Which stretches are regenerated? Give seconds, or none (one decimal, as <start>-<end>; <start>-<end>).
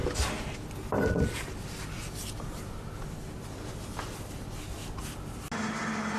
none